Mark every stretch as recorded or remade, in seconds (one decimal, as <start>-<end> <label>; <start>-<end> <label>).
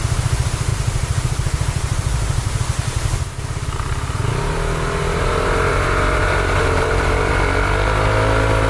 0.0-0.7 recorded; 0.7-2.6 remade; 2.6-5.7 recorded; 5.7-7.3 remade; 7.3-8.7 recorded